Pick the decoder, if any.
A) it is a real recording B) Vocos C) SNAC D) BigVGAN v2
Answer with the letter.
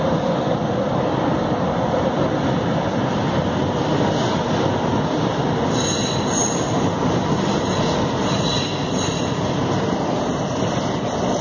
A